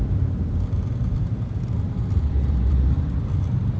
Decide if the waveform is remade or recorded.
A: remade